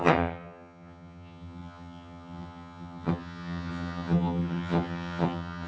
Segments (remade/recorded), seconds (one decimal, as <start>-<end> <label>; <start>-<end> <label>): 0.0-5.7 remade